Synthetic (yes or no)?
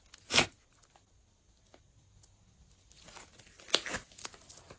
no